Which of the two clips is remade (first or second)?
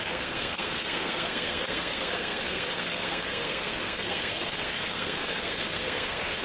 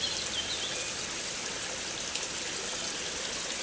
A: first